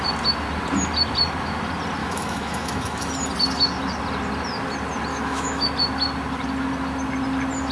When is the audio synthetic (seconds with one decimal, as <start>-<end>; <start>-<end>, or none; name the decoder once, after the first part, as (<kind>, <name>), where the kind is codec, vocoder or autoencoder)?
2.0-3.1 (autoencoder, DAC-VAE); 5.1-5.7